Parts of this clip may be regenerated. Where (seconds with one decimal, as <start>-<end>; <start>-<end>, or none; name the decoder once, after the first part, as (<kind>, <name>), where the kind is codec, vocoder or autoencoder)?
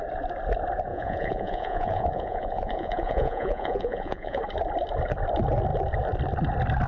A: 0.9-4.4 (vocoder, Vocos)